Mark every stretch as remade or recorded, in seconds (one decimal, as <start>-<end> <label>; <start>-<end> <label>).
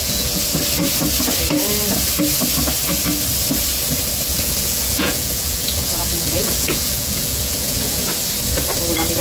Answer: 0.0-0.4 remade; 0.4-4.3 recorded; 4.3-8.1 remade; 8.1-9.2 recorded